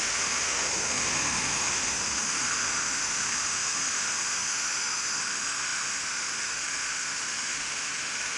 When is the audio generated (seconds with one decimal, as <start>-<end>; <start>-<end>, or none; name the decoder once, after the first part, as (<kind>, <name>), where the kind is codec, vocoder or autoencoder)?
0.0-8.4 (autoencoder, DAC-VAE)